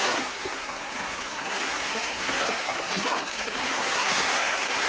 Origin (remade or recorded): remade